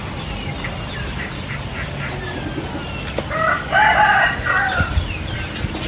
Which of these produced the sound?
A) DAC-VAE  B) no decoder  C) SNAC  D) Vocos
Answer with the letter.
B